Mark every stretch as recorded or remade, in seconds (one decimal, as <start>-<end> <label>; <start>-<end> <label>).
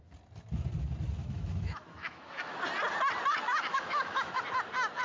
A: 0.0-1.2 recorded; 1.2-2.6 remade; 2.6-3.3 recorded; 3.3-4.4 remade; 4.4-5.0 recorded